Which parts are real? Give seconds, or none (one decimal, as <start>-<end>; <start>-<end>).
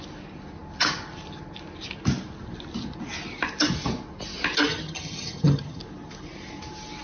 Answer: 0.0-4.7; 5.8-7.0